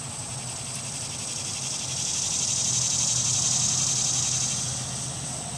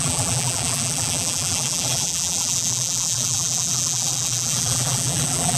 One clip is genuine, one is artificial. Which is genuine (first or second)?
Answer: first